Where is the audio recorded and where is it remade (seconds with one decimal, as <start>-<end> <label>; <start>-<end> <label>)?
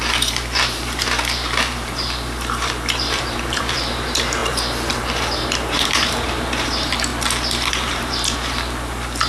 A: 0.0-7.1 remade; 7.1-7.7 recorded; 7.7-9.3 remade